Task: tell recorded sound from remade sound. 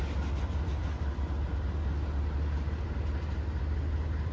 recorded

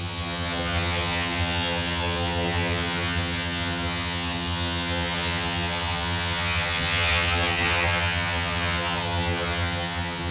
remade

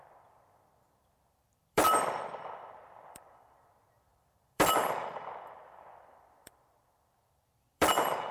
remade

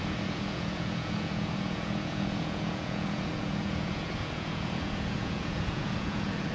remade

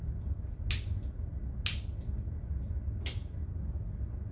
recorded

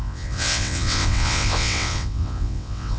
remade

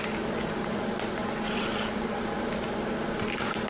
recorded